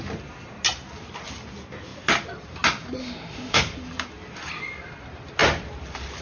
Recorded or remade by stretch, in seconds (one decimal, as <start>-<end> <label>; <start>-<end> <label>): 0.0-3.0 recorded; 3.0-3.6 remade; 3.6-6.2 recorded